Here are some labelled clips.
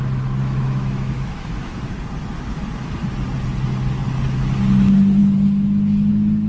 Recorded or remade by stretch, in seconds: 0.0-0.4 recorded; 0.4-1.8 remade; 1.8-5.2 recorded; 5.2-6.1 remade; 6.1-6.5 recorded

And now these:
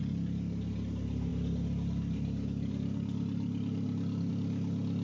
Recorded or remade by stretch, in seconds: 0.0-5.0 recorded

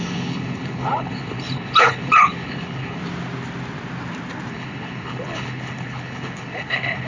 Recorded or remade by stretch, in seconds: 0.0-3.0 remade; 3.0-4.5 recorded; 4.5-7.1 remade